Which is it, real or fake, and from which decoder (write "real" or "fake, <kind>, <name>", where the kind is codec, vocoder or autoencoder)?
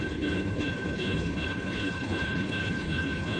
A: fake, codec, HILCodec